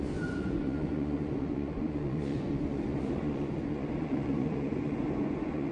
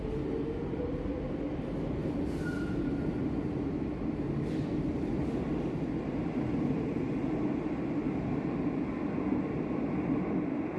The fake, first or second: first